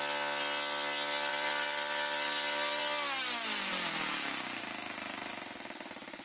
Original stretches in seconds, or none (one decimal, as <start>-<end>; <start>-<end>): 0.0-1.3; 2.8-3.7; 5.3-6.2